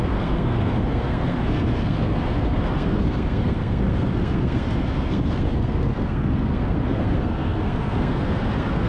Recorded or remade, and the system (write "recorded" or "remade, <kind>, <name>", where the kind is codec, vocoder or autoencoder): remade, codec, SNAC